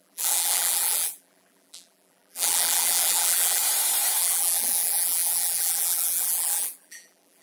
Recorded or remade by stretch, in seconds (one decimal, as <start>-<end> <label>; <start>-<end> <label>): 0.0-3.6 remade; 3.6-4.2 recorded; 4.2-7.4 remade